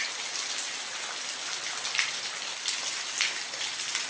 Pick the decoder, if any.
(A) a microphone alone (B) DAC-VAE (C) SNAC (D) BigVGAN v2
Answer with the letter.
A